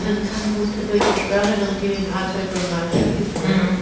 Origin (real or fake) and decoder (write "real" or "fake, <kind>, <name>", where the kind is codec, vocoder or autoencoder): real